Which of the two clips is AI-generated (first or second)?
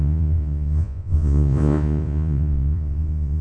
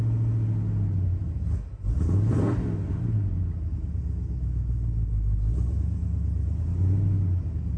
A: first